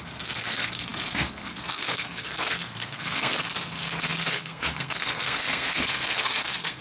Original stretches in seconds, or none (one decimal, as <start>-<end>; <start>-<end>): none